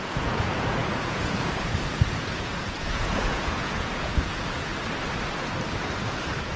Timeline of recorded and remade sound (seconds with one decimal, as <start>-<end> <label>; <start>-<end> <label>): 0.0-4.7 remade; 4.7-5.8 recorded; 5.8-6.6 remade